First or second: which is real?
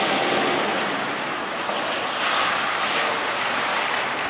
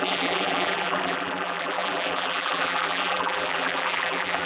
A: first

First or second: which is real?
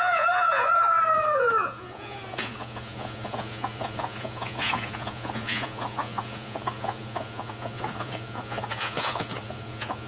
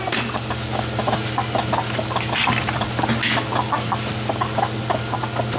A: second